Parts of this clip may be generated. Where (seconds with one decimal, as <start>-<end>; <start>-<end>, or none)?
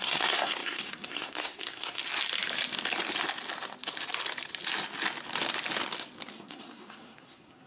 0.0-2.0; 6.3-7.7